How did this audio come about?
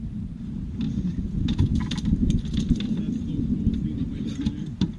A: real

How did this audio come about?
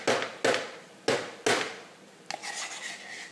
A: real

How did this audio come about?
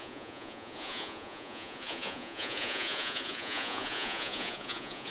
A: fake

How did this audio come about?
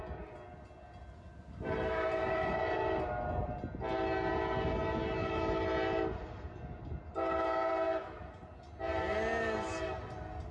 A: real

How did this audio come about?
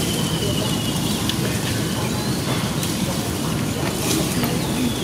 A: real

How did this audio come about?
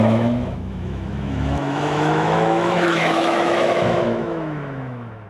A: fake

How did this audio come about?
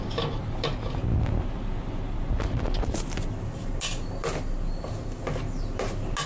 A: real